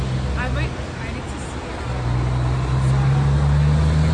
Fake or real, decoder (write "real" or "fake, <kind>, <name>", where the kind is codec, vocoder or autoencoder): real